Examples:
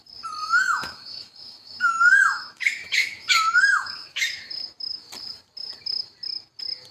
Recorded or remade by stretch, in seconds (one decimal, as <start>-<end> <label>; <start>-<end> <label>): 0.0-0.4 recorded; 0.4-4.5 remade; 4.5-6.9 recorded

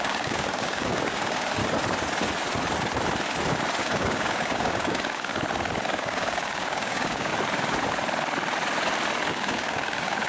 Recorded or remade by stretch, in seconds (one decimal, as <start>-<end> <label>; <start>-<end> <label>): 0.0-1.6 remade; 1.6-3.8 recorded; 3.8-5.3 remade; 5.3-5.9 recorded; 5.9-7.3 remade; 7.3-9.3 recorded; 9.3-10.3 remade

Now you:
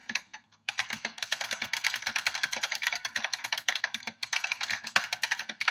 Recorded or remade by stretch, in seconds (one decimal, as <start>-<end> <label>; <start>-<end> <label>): 0.0-5.7 remade

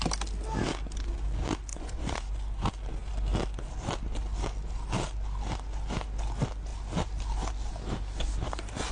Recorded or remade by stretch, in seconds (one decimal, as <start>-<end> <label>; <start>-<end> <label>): 0.0-1.7 recorded; 1.7-2.3 remade; 2.3-8.9 recorded

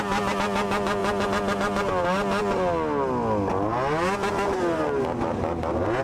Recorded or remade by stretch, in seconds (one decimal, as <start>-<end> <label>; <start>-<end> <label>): 0.0-6.0 recorded